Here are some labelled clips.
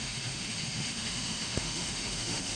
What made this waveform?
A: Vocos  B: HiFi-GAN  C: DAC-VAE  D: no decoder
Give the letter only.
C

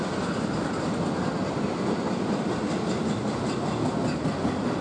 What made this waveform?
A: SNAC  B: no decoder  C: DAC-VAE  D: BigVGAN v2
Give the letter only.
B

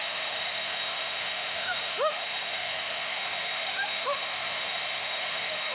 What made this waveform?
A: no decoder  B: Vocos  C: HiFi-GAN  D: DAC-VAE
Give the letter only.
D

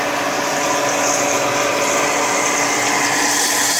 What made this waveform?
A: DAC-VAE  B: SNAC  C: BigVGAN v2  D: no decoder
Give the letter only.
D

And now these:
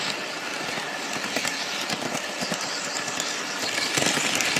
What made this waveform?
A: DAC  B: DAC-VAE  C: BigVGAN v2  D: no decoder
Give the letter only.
D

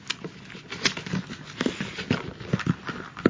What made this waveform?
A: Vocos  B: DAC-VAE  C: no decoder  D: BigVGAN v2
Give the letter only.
C